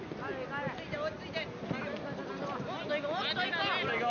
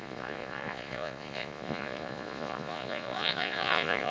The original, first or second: first